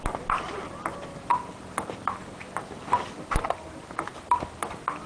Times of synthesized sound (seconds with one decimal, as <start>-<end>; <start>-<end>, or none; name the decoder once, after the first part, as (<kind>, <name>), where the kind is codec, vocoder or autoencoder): none